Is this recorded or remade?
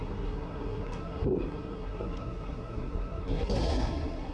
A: remade